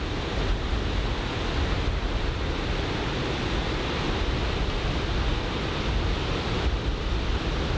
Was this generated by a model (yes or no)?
no